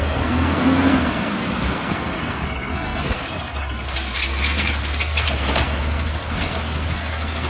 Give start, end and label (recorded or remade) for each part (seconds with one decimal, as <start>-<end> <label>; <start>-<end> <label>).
0.0-7.5 remade